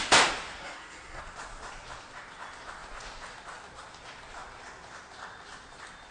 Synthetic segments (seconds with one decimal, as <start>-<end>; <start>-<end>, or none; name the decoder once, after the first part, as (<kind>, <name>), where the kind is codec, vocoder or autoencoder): 0.6-1.2 (codec, SNAC)